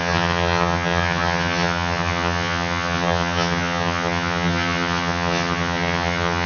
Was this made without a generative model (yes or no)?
no